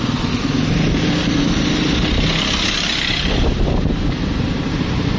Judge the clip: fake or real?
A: real